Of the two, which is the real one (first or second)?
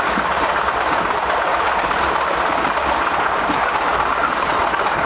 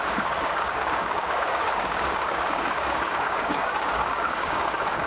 first